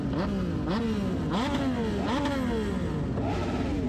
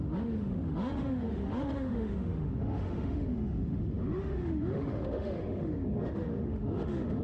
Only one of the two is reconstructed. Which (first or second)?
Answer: second